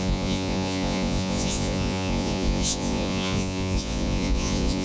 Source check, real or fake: fake